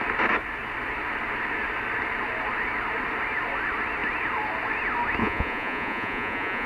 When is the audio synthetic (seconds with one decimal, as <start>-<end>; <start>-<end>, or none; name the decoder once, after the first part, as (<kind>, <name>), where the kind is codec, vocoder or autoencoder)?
5.2-6.7 (vocoder, Vocos)